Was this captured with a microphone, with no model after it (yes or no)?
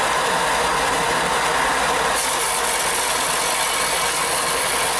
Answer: yes